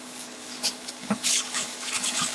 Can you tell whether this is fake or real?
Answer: fake